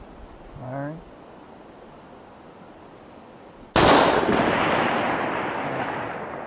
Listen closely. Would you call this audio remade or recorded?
recorded